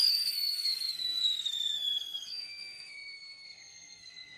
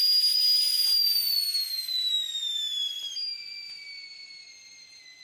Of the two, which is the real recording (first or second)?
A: second